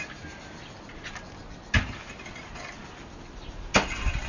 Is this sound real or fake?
real